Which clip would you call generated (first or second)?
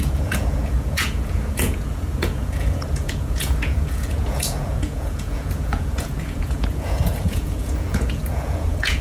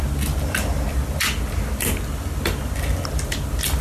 first